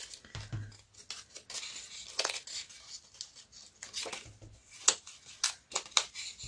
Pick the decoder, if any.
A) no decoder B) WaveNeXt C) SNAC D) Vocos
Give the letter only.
A